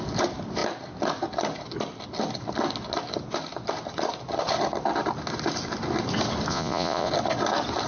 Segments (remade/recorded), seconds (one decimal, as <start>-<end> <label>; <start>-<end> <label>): 0.0-6.5 recorded; 6.5-7.1 remade; 7.1-7.9 recorded